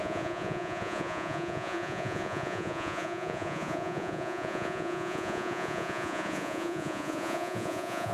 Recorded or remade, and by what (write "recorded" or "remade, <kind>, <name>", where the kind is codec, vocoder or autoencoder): remade, vocoder, Vocos